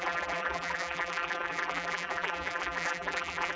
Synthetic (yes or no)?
yes